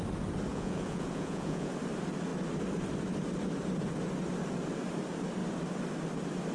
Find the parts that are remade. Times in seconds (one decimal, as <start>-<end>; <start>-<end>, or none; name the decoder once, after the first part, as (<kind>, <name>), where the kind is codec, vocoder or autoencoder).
0.5-1.7 (vocoder, Vocos)